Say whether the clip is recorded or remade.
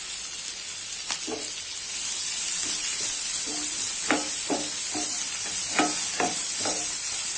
recorded